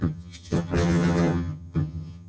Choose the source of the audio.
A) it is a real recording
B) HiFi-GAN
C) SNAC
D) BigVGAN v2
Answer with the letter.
B